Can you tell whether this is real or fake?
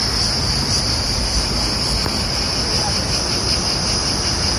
real